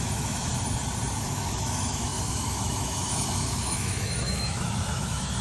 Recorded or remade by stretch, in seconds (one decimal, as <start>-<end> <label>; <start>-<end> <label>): 0.0-0.5 remade; 0.5-1.2 recorded; 1.2-5.4 remade